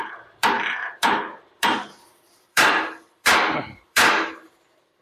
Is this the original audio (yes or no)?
no